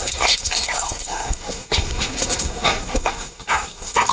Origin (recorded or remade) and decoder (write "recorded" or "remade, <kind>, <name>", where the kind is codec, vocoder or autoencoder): remade, codec, SNAC